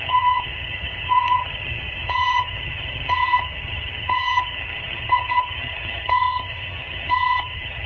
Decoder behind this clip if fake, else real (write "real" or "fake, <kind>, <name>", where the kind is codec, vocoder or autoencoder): fake, vocoder, HiFi-GAN